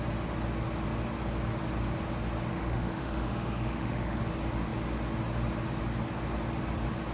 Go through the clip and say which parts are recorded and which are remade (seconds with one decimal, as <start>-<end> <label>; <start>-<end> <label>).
0.0-2.5 recorded; 2.5-4.2 remade; 4.2-7.1 recorded